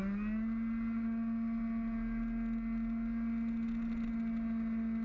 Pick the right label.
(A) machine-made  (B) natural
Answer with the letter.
B